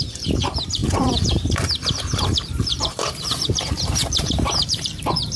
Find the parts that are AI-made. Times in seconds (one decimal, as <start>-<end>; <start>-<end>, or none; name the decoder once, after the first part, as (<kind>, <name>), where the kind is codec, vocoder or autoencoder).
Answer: 0.0-5.4 (vocoder, BigVGAN v2)